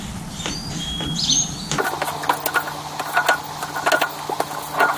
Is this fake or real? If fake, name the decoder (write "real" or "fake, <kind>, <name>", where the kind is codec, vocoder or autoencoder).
real